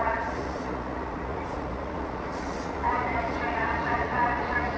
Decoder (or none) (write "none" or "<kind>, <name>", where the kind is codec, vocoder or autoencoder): vocoder, Vocos